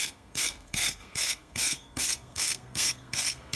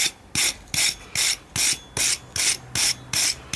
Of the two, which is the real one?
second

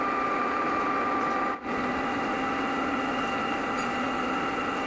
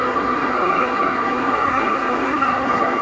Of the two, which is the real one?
first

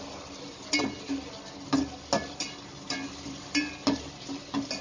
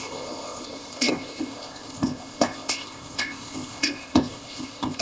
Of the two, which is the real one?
first